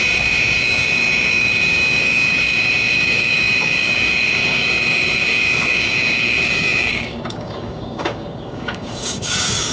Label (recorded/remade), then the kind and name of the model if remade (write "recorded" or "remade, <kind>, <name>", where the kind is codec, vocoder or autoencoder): remade, codec, DAC